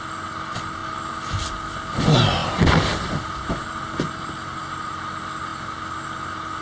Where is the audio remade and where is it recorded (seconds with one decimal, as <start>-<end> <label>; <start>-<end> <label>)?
0.0-6.6 recorded